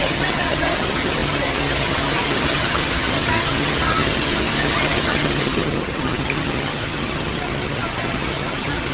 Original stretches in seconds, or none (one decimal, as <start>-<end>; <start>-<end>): none